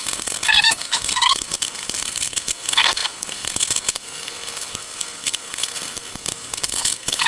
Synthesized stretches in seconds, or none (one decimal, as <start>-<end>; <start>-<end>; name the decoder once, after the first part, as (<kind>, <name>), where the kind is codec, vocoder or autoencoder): 0.0-7.3 (codec, SNAC)